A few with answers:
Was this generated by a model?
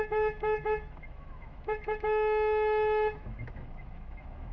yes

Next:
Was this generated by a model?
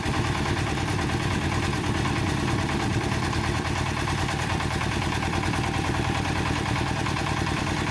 yes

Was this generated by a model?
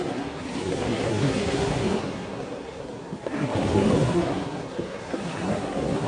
yes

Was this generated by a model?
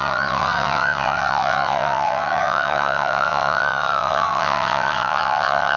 yes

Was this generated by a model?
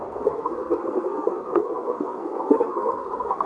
yes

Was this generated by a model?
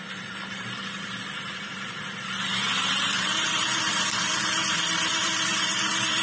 yes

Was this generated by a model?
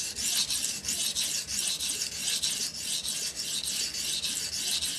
no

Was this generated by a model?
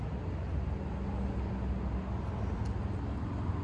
no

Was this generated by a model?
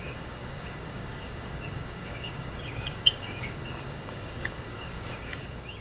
yes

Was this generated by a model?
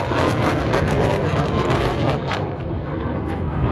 yes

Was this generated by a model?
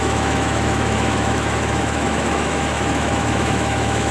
yes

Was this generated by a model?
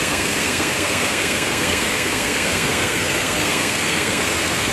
yes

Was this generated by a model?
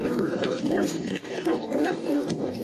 yes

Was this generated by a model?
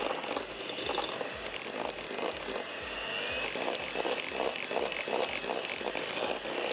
no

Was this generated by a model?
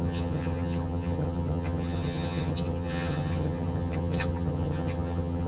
yes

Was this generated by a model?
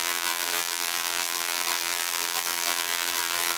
yes